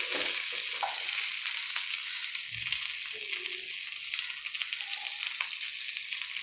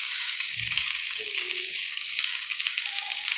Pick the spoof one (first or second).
second